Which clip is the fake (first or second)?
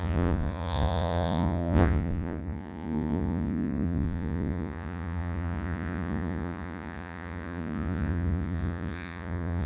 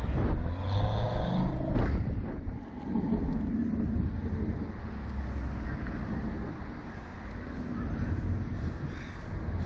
first